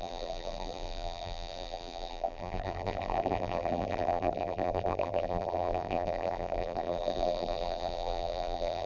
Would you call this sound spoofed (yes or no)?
yes